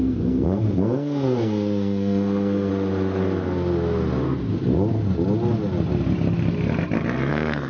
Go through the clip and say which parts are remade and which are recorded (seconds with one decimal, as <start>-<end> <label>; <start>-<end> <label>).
0.0-2.7 remade; 2.7-7.3 recorded; 7.3-7.7 remade